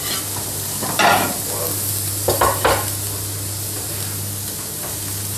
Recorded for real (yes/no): yes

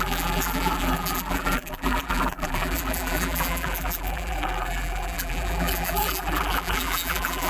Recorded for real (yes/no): no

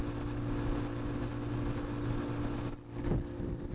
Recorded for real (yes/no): yes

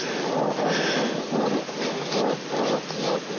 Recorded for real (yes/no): yes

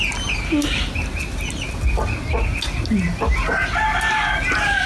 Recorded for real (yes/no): yes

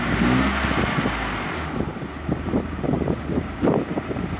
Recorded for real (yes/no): yes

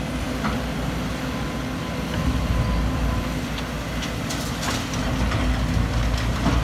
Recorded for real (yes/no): yes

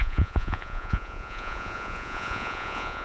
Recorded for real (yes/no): no